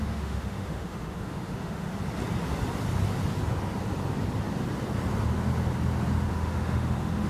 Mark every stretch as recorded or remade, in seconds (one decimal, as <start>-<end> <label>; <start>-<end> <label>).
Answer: 0.0-1.9 remade; 1.9-6.3 recorded; 6.3-7.3 remade